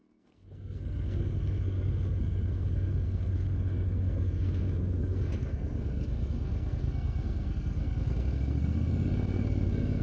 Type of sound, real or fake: fake